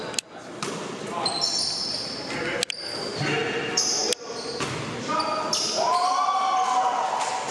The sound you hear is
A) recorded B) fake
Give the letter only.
A